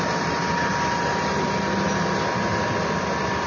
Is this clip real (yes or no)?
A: yes